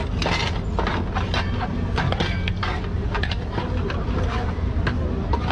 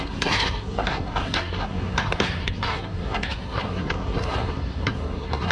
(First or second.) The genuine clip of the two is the first